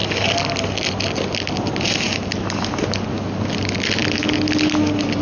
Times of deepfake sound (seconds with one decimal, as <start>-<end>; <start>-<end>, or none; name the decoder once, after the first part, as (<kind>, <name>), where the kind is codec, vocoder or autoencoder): none